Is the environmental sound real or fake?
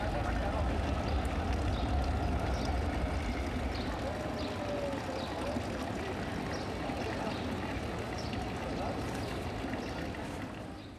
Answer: real